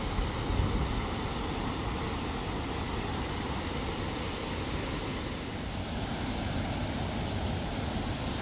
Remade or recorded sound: recorded